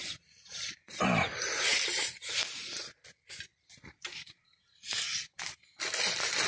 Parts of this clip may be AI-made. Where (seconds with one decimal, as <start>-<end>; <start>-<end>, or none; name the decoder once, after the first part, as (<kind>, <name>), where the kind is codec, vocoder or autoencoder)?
none